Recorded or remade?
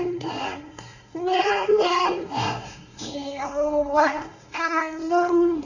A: remade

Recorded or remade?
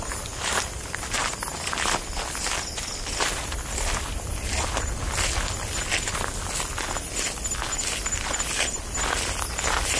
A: recorded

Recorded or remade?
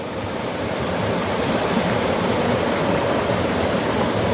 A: recorded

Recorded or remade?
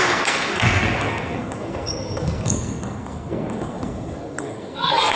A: remade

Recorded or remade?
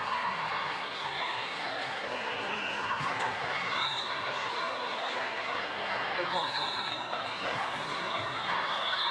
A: remade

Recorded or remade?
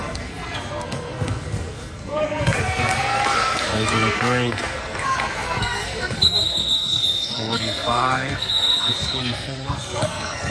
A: remade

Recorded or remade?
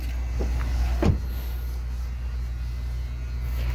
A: recorded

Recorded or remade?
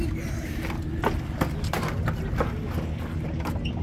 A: recorded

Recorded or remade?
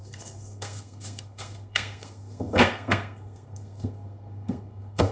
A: remade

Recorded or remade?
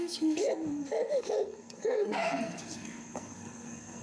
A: remade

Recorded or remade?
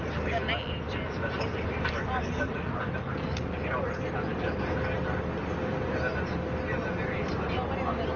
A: recorded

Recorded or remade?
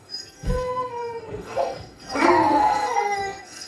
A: remade